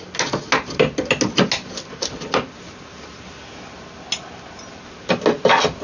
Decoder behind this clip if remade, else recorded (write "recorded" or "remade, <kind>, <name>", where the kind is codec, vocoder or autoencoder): recorded